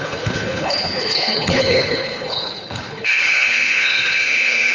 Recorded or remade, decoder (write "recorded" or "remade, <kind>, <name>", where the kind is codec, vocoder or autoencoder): remade, codec, HILCodec